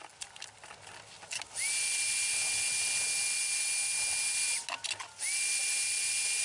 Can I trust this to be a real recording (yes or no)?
yes